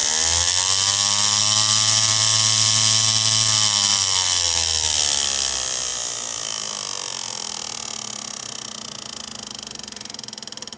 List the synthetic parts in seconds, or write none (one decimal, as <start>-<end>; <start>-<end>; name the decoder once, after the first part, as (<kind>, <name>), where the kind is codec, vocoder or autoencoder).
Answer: 3.9-5.0 (vocoder, BigVGAN v2); 5.9-6.7